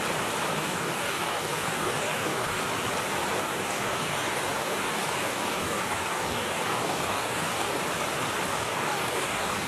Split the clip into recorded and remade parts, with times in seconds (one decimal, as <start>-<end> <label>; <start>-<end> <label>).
0.0-0.5 recorded; 0.5-2.6 remade; 2.6-3.3 recorded; 3.3-7.8 remade; 7.8-8.5 recorded; 8.5-9.7 remade